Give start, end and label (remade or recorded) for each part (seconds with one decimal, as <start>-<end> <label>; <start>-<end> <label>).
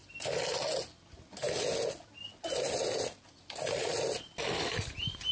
0.0-5.3 recorded